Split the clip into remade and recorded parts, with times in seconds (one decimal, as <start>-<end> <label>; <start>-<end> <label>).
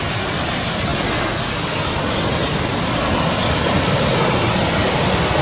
0.0-5.4 recorded